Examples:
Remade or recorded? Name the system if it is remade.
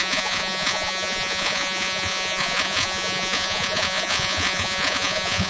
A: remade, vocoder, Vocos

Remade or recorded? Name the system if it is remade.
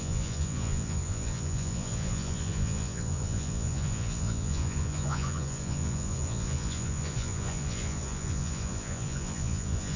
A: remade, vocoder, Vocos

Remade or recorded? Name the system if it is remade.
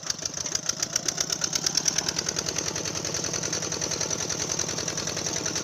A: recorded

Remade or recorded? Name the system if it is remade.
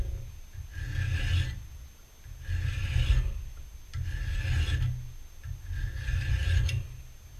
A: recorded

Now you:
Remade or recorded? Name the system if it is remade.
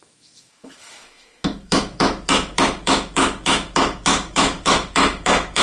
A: remade, autoencoder, DAC-VAE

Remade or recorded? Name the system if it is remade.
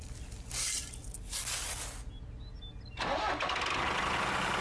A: recorded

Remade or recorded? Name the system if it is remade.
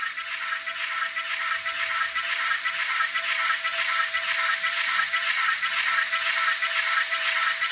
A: recorded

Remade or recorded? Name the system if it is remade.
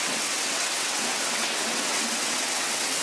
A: remade, vocoder, WaveNeXt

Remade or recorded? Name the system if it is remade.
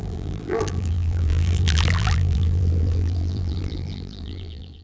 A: remade, vocoder, BigVGAN v2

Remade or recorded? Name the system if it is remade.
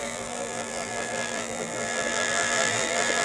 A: remade, vocoder, BigVGAN v2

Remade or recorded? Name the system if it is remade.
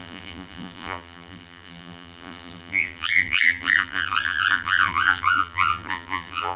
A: remade, vocoder, BigVGAN v2